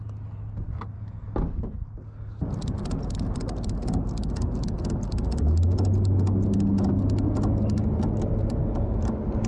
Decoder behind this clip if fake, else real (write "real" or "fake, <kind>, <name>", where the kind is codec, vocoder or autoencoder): real